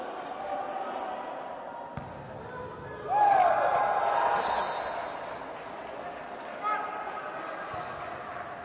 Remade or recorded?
recorded